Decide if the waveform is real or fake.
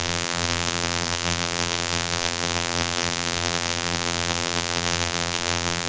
fake